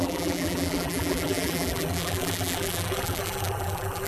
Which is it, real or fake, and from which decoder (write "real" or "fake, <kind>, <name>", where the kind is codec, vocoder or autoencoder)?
fake, vocoder, BigVGAN v2